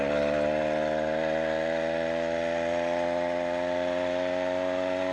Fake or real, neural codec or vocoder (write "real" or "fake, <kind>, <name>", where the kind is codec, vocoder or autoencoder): real